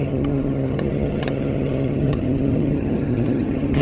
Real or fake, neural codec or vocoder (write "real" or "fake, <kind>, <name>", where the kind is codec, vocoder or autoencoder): fake, vocoder, HiFi-GAN